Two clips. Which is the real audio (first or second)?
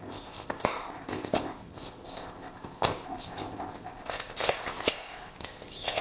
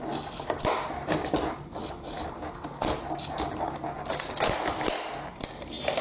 second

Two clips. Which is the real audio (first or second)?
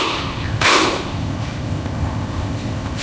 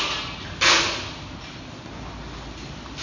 second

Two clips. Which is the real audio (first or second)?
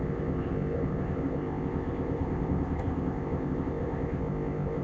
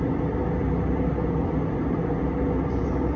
second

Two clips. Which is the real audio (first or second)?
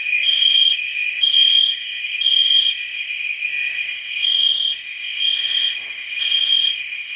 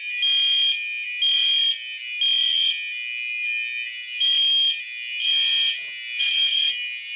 second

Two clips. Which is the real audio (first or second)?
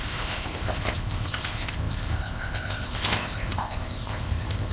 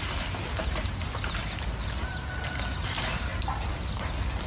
second